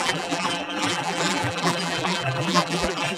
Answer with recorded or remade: remade